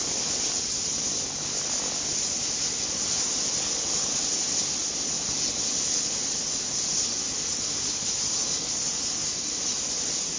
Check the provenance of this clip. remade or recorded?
recorded